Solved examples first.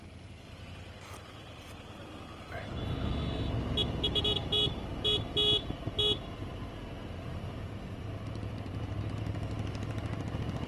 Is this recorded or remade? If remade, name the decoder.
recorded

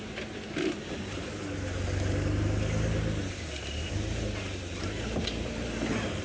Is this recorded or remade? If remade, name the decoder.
remade, vocoder, BigVGAN v2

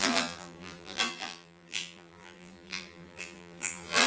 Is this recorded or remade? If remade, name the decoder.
remade, vocoder, BigVGAN v2